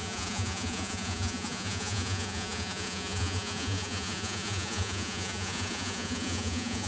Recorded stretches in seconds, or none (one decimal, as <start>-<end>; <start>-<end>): none